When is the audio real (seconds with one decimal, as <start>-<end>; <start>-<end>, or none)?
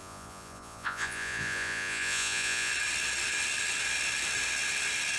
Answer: 2.7-5.2